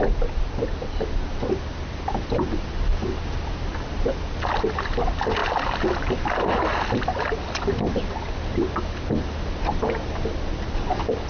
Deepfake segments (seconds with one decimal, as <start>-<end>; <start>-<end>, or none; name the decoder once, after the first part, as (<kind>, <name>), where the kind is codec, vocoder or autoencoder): none